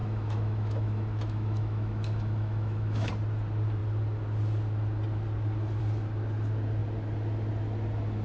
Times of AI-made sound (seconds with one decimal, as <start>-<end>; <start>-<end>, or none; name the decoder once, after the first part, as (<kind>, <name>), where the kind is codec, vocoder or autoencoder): 0.0-3.1 (autoencoder, DAC-VAE)